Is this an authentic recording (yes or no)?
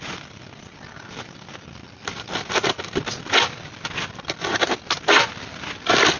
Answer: yes